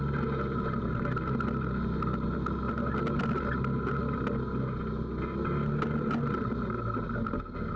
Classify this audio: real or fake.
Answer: real